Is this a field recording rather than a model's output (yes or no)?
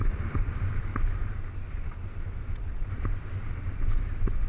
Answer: yes